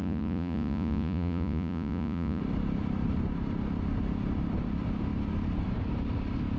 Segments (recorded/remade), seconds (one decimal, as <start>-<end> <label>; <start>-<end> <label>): 0.0-2.4 remade; 2.4-6.6 recorded